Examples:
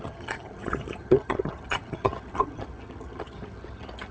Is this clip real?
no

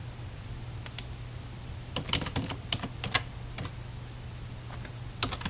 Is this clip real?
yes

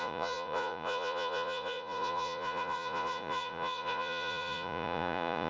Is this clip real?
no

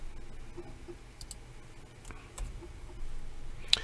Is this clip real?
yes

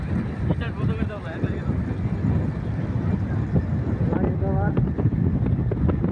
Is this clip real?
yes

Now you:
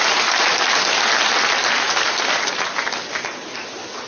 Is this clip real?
yes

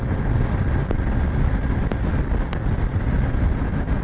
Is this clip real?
yes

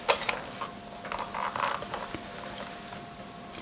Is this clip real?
yes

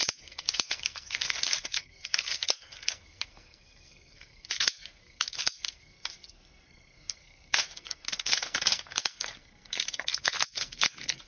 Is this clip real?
no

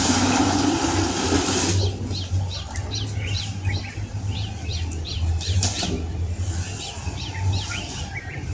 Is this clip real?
yes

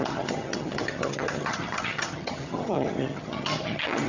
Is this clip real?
no